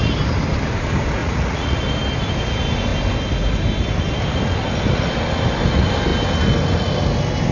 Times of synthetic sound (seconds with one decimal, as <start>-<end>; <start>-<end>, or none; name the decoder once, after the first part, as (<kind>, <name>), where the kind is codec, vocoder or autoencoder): 1.2-1.8 (vocoder, Vocos)